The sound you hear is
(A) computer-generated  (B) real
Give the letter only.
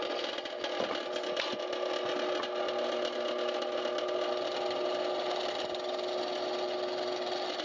B